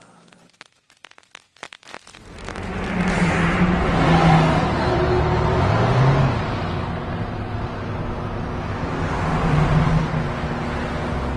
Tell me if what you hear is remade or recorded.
recorded